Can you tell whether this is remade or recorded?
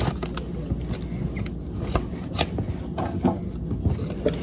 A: recorded